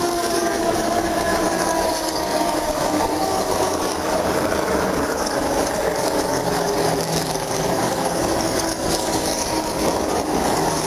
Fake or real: fake